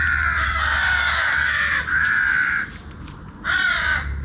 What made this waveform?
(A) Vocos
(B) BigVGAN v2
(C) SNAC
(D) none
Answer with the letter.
B